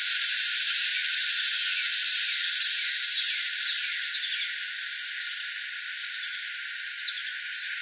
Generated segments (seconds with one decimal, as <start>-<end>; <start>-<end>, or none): 0.0-0.9; 2.6-7.8